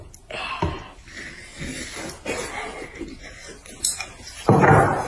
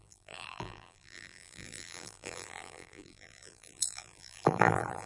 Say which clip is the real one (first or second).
first